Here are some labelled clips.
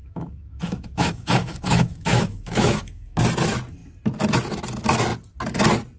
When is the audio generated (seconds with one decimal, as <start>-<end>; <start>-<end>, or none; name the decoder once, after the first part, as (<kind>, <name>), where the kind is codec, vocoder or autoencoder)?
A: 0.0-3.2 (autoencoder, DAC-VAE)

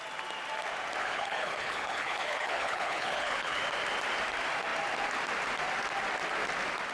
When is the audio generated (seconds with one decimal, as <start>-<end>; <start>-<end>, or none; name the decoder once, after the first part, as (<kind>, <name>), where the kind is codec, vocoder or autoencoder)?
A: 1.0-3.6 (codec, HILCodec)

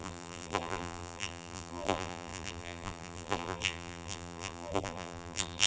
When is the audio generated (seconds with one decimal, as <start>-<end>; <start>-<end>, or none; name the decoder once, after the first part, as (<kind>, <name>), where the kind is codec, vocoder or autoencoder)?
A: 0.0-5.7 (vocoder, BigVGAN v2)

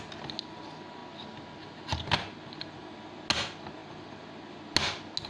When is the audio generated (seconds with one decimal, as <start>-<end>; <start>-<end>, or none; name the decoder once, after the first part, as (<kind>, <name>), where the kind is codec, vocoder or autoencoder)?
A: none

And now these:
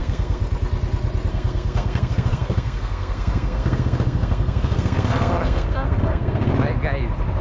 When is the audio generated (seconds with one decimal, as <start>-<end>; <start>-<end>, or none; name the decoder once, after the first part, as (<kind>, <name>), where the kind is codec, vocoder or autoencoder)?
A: 0.0-0.4 (codec, SNAC); 1.3-6.5